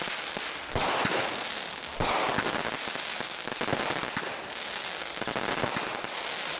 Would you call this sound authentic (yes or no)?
yes